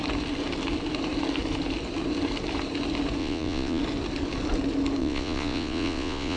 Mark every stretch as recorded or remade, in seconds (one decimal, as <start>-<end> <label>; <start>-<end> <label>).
0.0-3.2 recorded; 3.2-3.8 remade; 3.8-5.0 recorded; 5.0-6.4 remade